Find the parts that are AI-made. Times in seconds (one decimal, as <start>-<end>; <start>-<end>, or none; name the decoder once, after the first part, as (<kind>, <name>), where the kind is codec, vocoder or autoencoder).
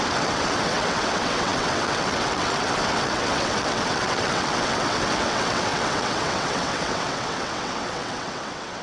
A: 0.0-8.8 (vocoder, WaveNeXt)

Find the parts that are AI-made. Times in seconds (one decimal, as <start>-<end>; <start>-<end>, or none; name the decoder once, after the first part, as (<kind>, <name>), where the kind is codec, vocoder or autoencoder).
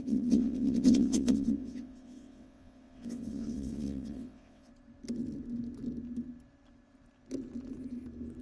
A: 0.0-4.7 (vocoder, WaveNeXt)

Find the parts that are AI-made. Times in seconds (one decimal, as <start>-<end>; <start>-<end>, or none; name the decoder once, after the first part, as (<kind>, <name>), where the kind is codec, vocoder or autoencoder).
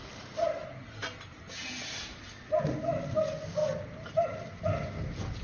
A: none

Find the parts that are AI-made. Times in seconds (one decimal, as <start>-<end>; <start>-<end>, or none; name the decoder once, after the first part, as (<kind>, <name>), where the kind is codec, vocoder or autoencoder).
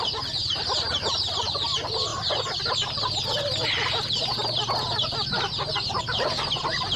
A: 0.0-2.1 (vocoder, BigVGAN v2); 6.0-7.0